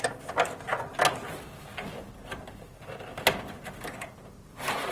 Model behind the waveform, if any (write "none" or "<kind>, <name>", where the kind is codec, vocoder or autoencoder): none